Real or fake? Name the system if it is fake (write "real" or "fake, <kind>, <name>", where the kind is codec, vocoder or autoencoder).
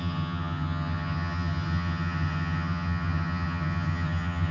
fake, vocoder, HiFi-GAN